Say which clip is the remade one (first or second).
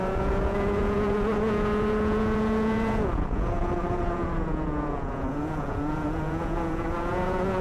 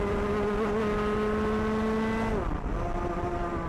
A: first